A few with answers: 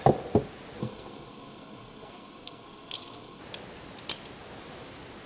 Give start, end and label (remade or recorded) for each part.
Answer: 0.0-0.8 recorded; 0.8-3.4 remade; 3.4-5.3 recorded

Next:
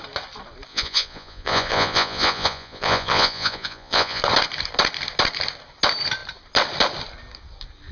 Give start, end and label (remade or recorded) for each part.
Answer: 0.0-0.7 recorded; 0.7-4.2 remade; 4.2-7.9 recorded

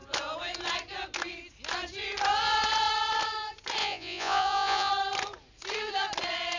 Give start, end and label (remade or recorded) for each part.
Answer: 0.0-3.8 recorded; 3.8-4.9 remade; 4.9-6.6 recorded

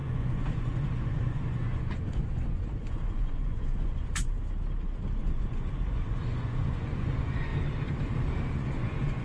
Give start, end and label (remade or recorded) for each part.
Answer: 0.0-4.3 remade; 4.3-5.2 recorded; 5.2-7.5 remade; 7.5-8.5 recorded; 8.5-9.2 remade

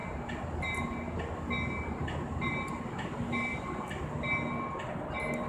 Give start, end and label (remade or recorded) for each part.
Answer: 0.0-5.5 recorded

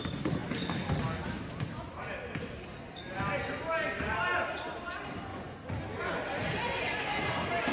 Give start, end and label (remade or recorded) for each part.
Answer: 0.0-5.3 recorded; 5.3-5.8 remade; 5.8-7.7 recorded

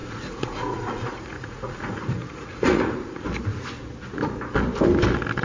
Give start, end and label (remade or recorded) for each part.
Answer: 0.0-3.2 remade; 3.2-5.4 recorded

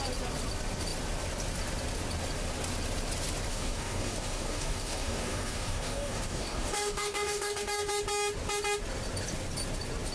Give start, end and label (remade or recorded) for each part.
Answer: 0.0-3.5 recorded; 3.5-7.9 remade; 7.9-10.1 recorded